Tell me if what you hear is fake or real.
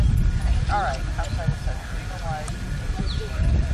real